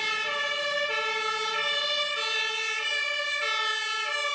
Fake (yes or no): no